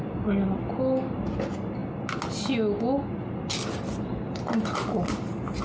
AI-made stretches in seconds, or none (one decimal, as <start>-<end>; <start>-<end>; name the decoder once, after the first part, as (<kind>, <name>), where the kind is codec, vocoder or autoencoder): none